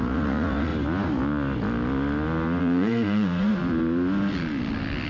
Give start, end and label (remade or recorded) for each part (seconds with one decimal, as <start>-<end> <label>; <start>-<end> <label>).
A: 0.0-0.7 remade; 0.7-2.6 recorded; 2.6-3.6 remade; 3.6-5.1 recorded

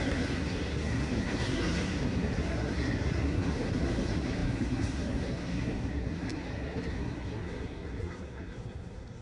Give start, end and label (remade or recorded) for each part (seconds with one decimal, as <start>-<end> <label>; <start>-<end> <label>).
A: 0.0-9.2 remade

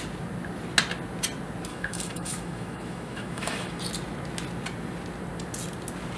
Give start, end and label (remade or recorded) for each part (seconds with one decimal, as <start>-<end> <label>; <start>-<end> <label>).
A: 0.0-1.7 recorded; 1.7-3.8 remade; 3.8-6.2 recorded

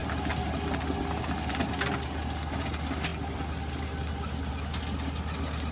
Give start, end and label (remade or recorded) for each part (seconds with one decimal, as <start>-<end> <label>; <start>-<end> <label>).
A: 0.0-5.7 recorded

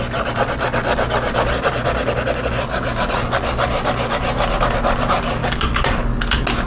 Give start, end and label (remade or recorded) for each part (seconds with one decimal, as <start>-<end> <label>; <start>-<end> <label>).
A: 0.0-5.4 recorded; 5.4-6.1 remade; 6.1-6.7 recorded